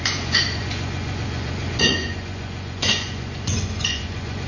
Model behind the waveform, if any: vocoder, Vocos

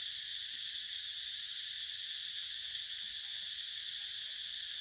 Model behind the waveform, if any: none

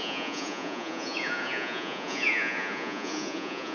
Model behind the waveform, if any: vocoder, Vocos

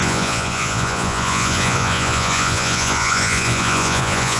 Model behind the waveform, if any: vocoder, Vocos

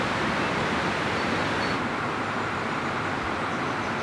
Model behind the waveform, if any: none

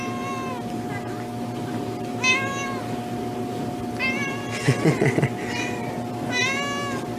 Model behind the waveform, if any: none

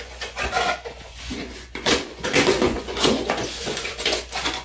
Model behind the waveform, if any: vocoder, Vocos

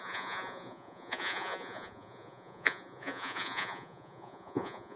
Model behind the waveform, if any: vocoder, Vocos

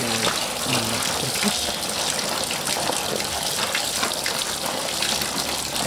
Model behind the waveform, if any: none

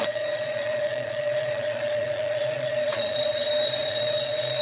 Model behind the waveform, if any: vocoder, Vocos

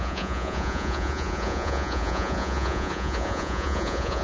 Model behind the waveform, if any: vocoder, Vocos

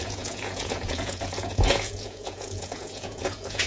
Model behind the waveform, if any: vocoder, Vocos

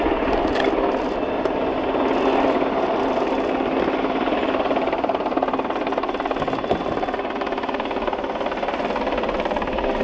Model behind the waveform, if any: none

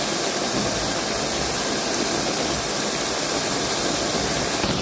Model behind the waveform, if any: none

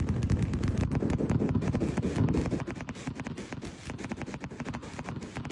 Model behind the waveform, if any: none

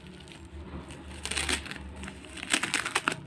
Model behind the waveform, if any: none